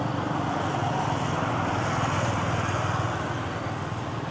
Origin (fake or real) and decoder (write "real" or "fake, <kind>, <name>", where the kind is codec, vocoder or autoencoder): real